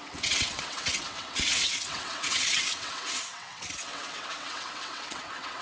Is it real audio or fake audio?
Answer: fake